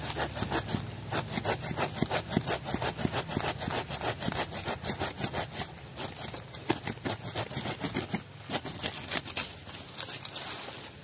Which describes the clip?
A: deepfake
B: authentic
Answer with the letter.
B